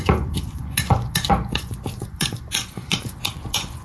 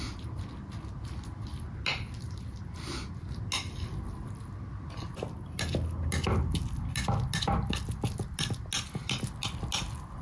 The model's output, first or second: first